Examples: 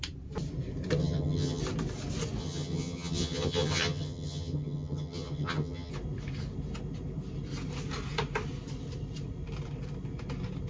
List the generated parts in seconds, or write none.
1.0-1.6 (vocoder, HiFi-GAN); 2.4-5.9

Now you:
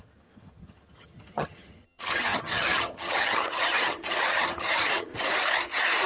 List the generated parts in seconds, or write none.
0.0-5.1 (vocoder, HiFi-GAN)

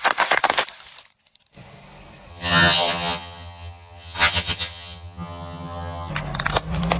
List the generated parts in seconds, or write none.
2.3-6.1 (vocoder, HiFi-GAN)

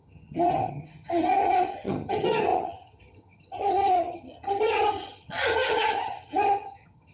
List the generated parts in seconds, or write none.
0.0-7.1 (vocoder, HiFi-GAN)

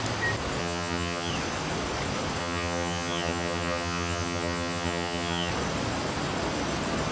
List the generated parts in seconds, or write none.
0.6-1.3 (vocoder, HiFi-GAN); 2.4-5.5

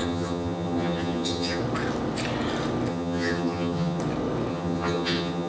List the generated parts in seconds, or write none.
0.0-1.6 (vocoder, HiFi-GAN); 2.9-4.0; 4.5-5.5

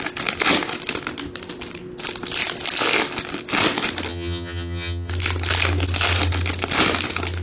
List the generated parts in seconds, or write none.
4.1-5.1 (vocoder, HiFi-GAN)